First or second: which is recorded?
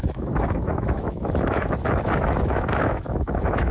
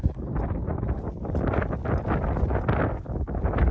second